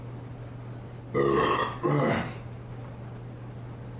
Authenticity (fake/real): real